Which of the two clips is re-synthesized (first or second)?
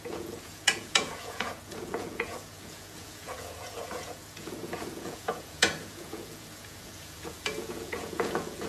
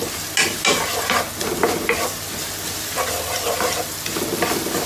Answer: first